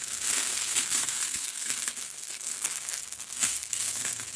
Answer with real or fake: fake